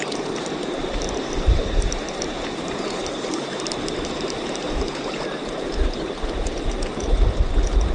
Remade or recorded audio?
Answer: remade